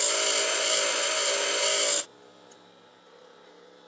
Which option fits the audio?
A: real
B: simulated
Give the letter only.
A